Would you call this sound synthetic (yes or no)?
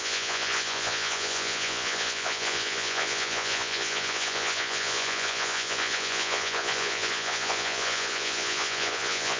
yes